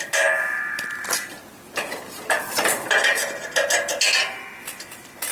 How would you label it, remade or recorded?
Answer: recorded